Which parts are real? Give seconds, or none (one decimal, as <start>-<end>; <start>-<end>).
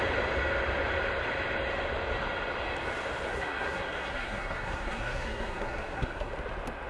0.0-3.3; 6.3-6.9